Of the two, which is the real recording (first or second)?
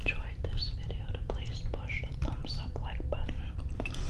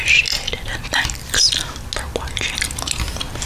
second